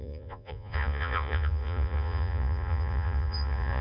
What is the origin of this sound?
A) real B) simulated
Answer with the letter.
B